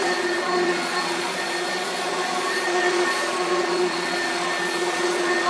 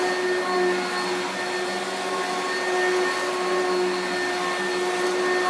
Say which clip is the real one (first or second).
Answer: second